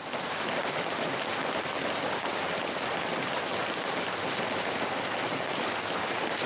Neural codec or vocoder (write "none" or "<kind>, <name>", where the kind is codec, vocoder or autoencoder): none